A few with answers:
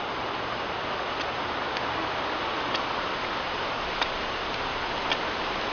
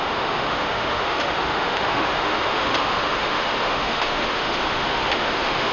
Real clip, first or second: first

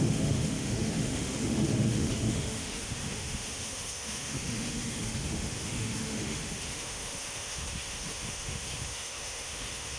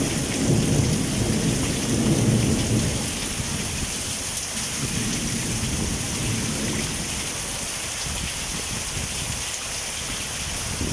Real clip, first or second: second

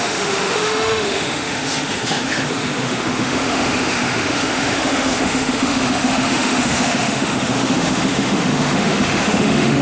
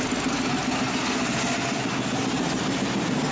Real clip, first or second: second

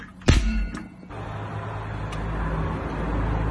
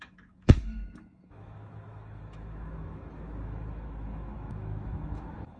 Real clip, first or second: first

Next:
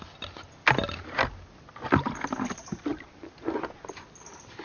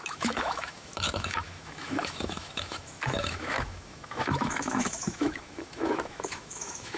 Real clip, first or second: first